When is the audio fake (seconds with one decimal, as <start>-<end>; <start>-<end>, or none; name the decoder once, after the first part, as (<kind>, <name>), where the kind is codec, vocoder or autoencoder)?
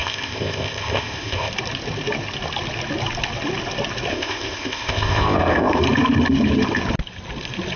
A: 0.0-1.5 (codec, ZipCodec); 4.1-5.8